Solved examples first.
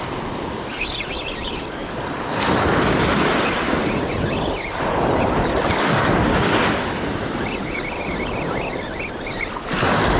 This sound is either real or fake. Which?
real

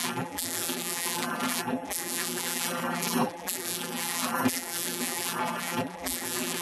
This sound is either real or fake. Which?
fake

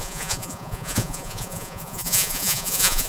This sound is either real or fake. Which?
fake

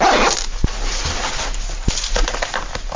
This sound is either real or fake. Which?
real